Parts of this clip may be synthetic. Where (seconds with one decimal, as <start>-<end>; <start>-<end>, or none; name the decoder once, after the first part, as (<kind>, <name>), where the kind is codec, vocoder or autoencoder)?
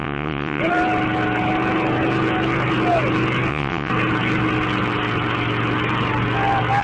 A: 0.0-0.6 (vocoder, WaveNeXt); 3.5-3.9